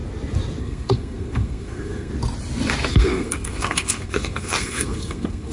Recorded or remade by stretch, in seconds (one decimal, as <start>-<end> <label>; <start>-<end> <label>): 0.0-0.6 recorded; 0.6-2.1 remade; 2.1-2.9 recorded; 2.9-5.5 remade